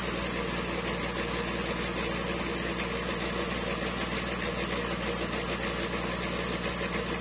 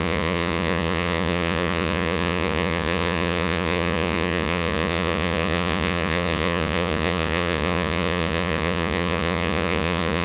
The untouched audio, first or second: first